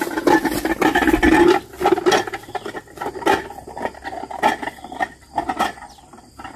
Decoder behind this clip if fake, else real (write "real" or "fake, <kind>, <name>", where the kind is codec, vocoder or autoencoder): real